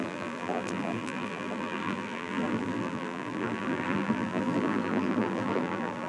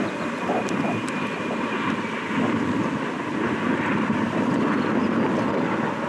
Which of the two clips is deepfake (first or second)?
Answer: first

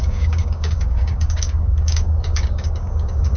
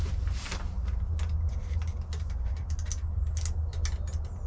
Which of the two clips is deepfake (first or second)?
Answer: first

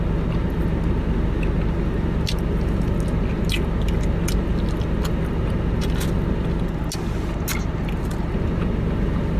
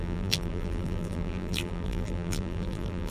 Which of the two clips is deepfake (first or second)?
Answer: second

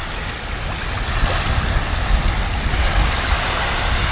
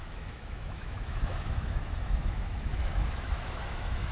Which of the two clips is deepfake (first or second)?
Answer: second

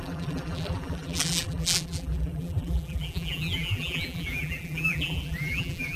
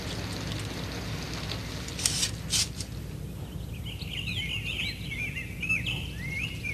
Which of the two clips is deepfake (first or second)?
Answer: first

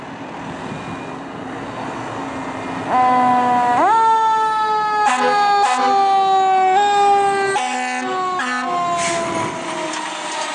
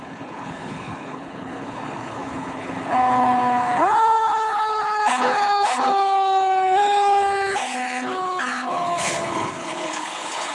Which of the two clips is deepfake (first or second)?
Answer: second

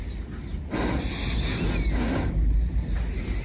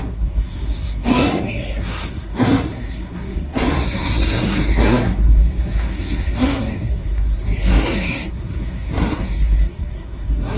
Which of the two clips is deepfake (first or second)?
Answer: second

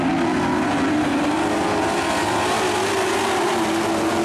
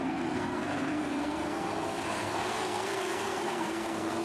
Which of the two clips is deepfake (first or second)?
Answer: second